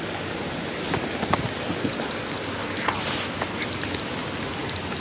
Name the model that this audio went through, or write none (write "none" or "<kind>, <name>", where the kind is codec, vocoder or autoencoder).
none